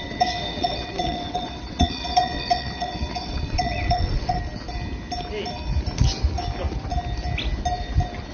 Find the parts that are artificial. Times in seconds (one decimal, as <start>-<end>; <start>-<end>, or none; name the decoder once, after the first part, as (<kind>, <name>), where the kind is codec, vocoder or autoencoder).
0.0-4.4 (vocoder, WaveNeXt)